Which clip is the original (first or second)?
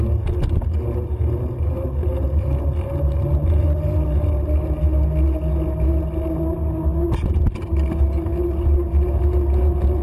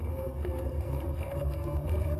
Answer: first